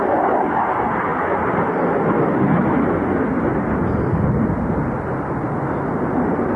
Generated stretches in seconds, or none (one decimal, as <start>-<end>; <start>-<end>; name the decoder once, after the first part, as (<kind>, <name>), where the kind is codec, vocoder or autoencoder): none